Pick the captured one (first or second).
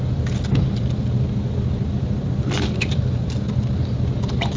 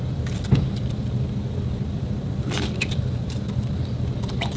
first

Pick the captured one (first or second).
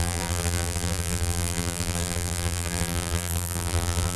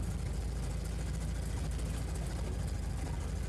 second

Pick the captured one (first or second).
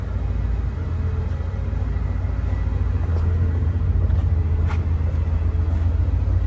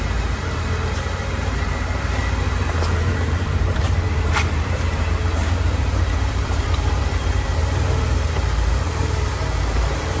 first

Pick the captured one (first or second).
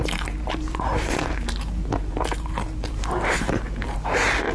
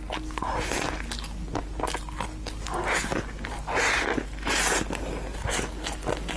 second